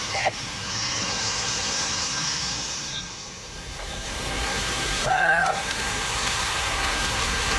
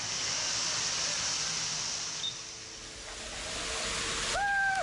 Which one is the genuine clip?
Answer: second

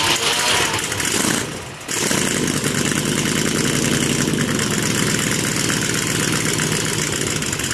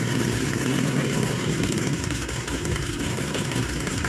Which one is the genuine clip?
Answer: first